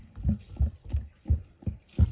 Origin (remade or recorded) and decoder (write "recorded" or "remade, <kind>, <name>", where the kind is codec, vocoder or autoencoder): remade, vocoder, BigVGAN v2